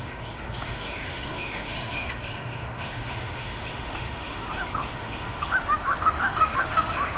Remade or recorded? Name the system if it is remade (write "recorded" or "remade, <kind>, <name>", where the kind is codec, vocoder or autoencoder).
remade, autoencoder, DAC-VAE